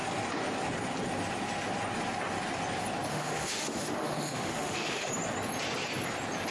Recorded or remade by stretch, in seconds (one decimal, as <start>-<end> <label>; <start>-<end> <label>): 0.0-3.1 recorded; 3.1-5.1 remade; 5.1-6.5 recorded